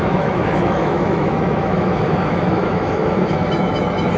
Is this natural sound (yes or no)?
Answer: no